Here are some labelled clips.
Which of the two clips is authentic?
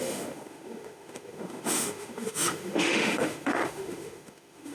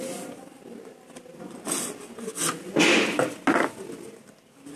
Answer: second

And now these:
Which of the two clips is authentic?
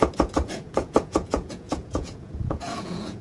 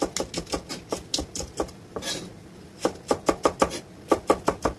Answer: second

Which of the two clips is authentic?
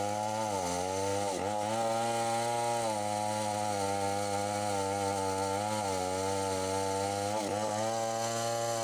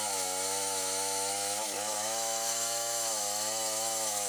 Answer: first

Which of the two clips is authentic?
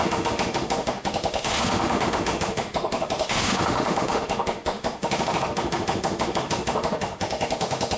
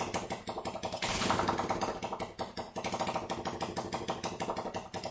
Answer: second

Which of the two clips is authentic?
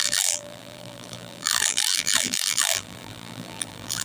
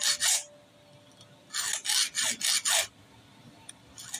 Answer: second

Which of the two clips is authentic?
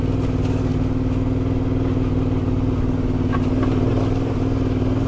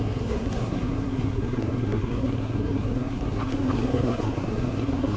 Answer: first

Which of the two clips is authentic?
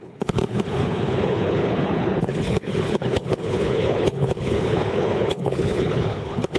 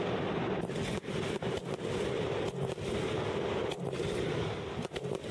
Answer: second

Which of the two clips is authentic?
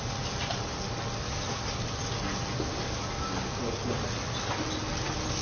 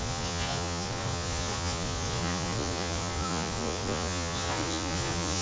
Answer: first